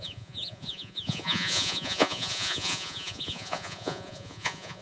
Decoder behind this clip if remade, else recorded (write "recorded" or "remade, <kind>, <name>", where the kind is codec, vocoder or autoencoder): remade, vocoder, Vocos